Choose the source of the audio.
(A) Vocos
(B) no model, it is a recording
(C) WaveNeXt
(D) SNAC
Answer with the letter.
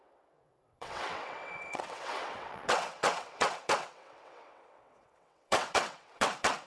C